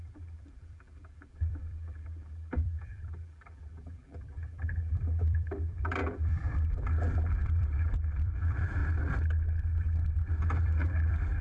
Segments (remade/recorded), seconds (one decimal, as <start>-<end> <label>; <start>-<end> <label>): 0.0-8.8 remade; 8.8-10.6 recorded; 10.6-11.4 remade